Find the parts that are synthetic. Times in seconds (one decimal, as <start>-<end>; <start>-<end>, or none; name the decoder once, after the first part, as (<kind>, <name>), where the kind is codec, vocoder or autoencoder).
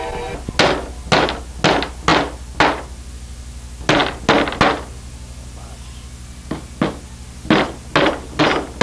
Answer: none